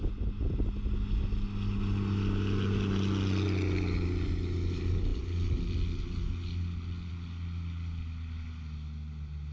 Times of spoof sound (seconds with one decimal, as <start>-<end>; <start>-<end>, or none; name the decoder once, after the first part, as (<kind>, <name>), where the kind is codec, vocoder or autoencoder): none